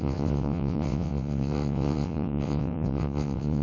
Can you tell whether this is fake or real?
fake